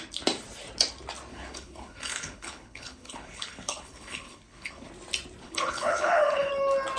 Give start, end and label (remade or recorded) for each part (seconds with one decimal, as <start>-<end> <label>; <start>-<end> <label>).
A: 0.0-1.3 recorded; 1.3-4.9 remade; 4.9-5.4 recorded; 5.4-6.5 remade; 6.5-7.0 recorded